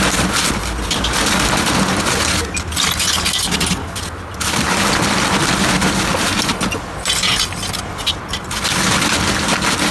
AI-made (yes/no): no